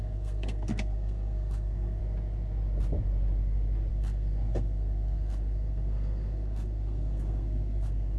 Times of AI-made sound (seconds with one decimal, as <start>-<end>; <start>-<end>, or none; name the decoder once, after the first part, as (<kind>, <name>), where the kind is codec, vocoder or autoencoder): 0.0-2.0 (codec, SNAC); 3.9-8.2